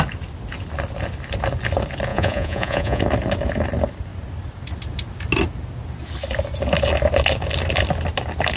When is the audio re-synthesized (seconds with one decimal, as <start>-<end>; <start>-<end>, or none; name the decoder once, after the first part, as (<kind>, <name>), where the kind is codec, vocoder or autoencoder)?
2.1-3.0 (vocoder, Vocos)